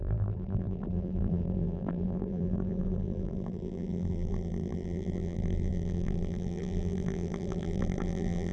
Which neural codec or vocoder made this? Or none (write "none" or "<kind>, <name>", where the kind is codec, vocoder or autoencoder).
vocoder, BigVGAN v2